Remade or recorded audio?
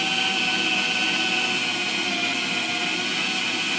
recorded